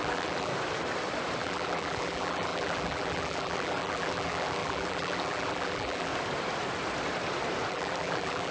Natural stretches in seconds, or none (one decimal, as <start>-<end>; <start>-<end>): 0.5-1.4; 6.1-7.7